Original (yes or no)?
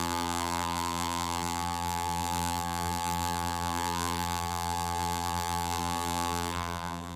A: no